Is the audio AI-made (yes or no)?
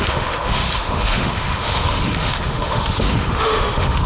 yes